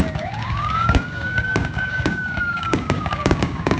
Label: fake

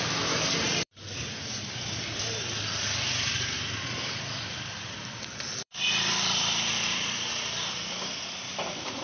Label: fake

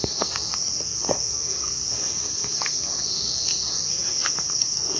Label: fake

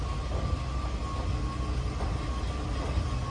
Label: real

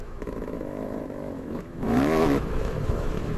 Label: fake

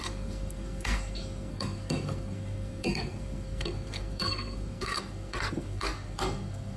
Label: fake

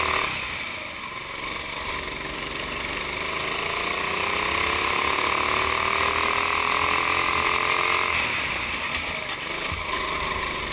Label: real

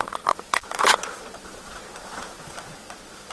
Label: fake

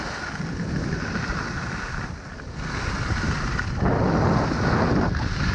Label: real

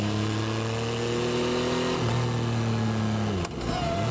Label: real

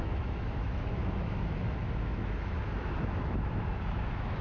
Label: fake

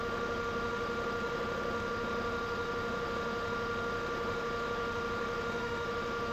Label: fake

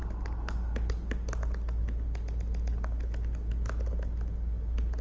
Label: real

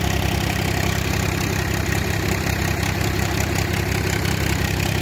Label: fake